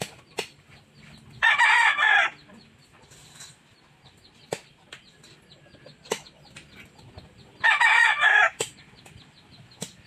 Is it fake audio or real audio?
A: real